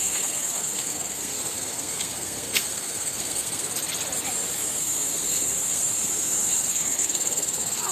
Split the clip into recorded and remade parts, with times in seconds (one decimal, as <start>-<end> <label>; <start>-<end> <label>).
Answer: 0.0-3.7 remade; 3.7-4.5 recorded; 4.5-7.9 remade

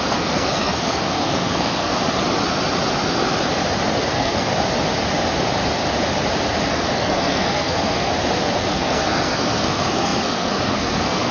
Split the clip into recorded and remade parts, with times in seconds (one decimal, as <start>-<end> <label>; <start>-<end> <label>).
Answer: 0.0-1.9 remade; 1.9-4.1 recorded; 4.1-4.5 remade; 4.5-6.7 recorded; 6.7-8.1 remade; 8.1-8.6 recorded; 8.6-11.3 remade